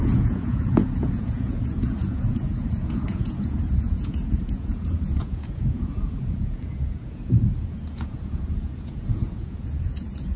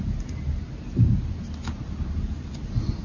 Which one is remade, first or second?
first